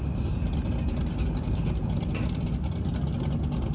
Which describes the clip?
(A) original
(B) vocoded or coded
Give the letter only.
A